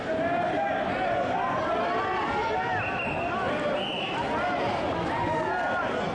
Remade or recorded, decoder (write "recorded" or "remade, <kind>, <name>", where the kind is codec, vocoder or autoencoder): recorded